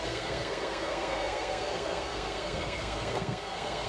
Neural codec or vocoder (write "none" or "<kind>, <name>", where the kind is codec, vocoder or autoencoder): codec, SNAC